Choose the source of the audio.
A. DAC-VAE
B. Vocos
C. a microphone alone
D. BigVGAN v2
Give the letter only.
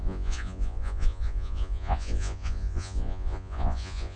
B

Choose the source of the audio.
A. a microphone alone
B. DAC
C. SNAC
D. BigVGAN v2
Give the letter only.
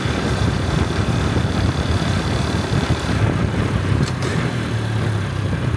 D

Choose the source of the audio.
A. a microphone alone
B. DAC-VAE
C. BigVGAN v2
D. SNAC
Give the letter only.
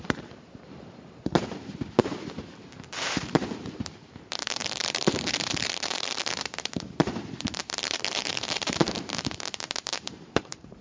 C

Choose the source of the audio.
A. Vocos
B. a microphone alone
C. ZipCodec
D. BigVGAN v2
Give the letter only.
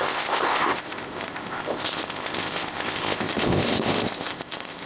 C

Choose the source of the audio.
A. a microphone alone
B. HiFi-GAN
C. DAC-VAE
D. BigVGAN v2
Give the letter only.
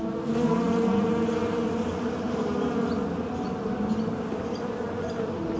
A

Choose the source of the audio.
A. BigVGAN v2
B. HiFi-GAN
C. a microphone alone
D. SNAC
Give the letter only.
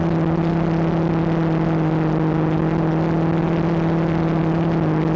C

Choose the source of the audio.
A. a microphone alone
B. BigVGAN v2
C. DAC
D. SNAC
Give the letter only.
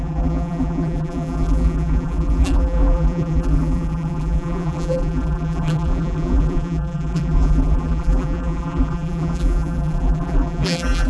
B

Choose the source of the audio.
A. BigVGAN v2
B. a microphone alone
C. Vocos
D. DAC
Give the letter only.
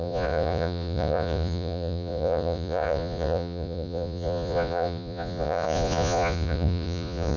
C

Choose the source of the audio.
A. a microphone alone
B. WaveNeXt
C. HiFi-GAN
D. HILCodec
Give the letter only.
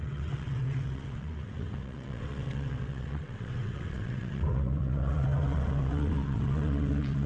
B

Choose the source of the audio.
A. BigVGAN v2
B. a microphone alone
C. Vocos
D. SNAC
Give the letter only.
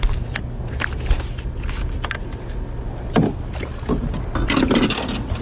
B